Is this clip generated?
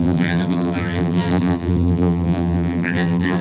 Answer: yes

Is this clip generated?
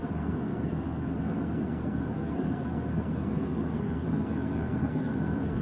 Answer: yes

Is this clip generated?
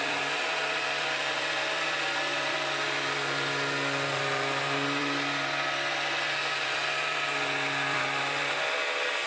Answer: yes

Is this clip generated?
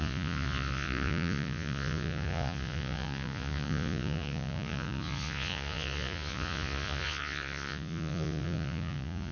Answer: yes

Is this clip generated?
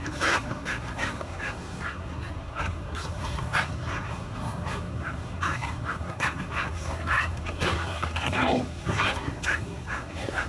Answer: yes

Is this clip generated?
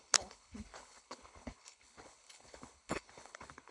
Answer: yes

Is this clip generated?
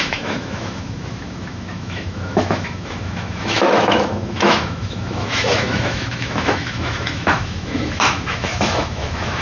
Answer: yes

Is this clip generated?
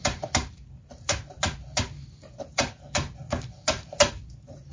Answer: yes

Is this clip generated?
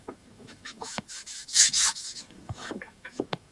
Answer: yes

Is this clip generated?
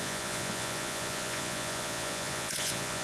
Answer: yes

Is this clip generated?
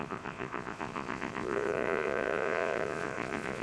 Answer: yes